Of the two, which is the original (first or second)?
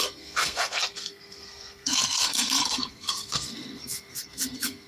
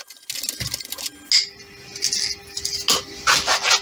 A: second